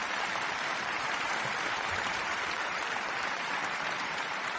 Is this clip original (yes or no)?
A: no